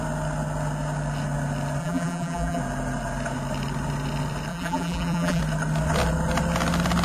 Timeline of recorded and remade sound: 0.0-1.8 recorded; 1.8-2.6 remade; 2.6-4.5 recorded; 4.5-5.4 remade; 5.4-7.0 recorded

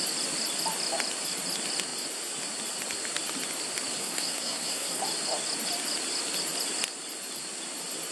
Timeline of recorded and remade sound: 0.0-4.0 recorded; 4.0-5.0 remade; 5.0-8.1 recorded

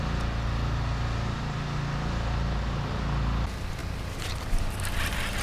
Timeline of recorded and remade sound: 0.0-5.4 recorded

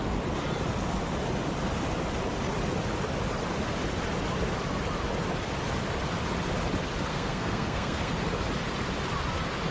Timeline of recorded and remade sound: 0.0-7.1 recorded; 7.1-8.1 remade; 8.1-9.7 recorded

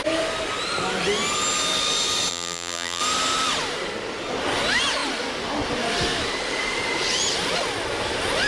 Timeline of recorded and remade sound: 0.0-2.3 recorded; 2.3-3.0 remade; 3.0-8.5 recorded